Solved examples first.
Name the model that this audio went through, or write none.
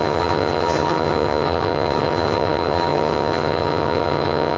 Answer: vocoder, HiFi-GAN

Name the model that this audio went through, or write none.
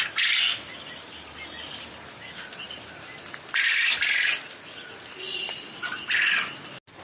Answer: none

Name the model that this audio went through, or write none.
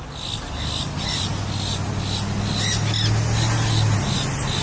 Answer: none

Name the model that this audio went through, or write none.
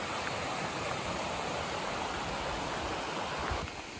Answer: none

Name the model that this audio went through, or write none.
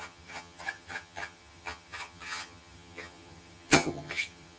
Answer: vocoder, HiFi-GAN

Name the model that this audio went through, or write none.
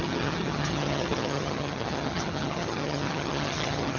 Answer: vocoder, HiFi-GAN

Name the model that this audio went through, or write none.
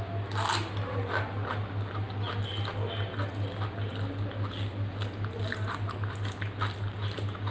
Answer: none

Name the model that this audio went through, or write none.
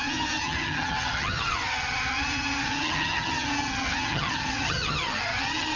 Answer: vocoder, HiFi-GAN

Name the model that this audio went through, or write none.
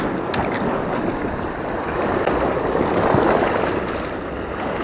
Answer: none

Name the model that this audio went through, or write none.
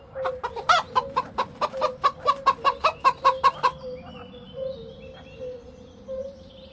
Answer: none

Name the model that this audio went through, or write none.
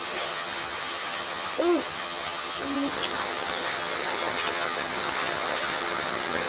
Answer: vocoder, HiFi-GAN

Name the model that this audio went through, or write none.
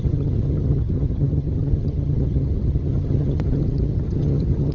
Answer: vocoder, HiFi-GAN